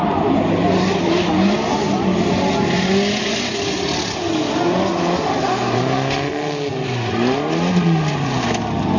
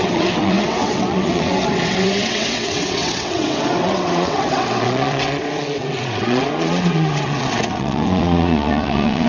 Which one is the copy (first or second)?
second